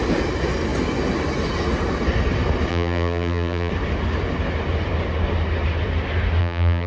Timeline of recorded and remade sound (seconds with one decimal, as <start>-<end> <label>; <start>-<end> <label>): 0.0-2.7 recorded; 2.7-3.7 remade; 3.7-6.4 recorded; 6.4-6.9 remade